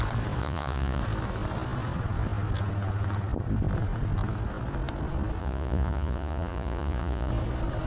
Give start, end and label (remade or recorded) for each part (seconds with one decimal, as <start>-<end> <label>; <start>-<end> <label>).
0.0-0.4 recorded; 0.4-1.0 remade; 1.0-5.4 recorded; 5.4-7.3 remade; 7.3-7.9 recorded

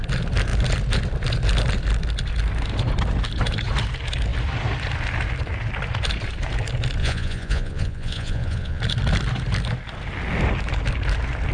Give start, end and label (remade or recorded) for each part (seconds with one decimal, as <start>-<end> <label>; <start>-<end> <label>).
0.0-7.0 recorded; 7.0-8.8 remade; 8.8-11.5 recorded

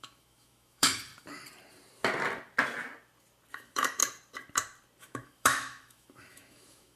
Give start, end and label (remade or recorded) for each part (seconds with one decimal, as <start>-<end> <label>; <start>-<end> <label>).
0.0-1.1 remade; 1.1-3.5 recorded; 3.5-4.0 remade; 4.0-5.0 recorded; 5.0-7.0 remade

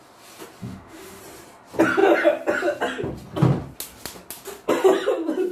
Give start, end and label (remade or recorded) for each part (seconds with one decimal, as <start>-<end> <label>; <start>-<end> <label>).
0.0-0.6 recorded; 0.6-1.2 remade; 1.2-5.5 recorded

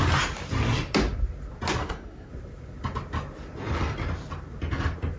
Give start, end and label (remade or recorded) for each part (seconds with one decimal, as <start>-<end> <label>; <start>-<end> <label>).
0.0-1.8 recorded; 1.8-2.3 remade; 2.3-5.2 recorded

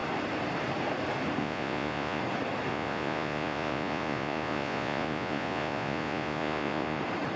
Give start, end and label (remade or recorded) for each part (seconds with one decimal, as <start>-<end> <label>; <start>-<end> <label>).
0.0-1.4 recorded; 1.4-2.2 remade; 2.2-2.7 recorded; 2.7-7.0 remade; 7.0-7.4 recorded

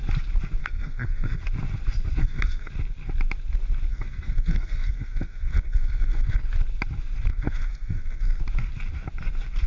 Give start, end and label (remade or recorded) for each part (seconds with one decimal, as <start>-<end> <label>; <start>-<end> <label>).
0.0-0.6 recorded; 0.6-1.4 remade; 1.4-2.2 recorded; 2.2-2.7 remade; 2.7-3.9 recorded; 3.9-6.4 remade; 6.4-7.3 recorded; 7.3-8.4 remade; 8.4-9.7 recorded

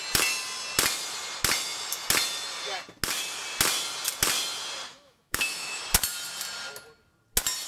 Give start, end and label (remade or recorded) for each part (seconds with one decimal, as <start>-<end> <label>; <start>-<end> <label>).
0.0-4.9 recorded; 4.9-5.8 remade; 5.8-7.7 recorded